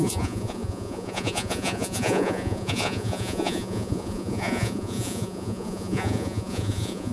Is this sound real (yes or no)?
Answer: no